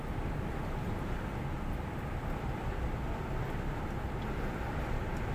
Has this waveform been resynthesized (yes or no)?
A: no